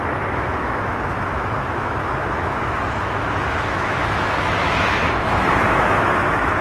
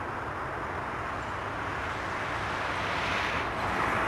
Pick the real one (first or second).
second